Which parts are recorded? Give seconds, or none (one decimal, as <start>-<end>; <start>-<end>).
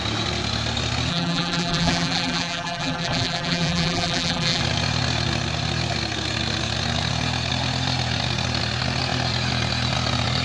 0.0-1.1; 4.6-10.4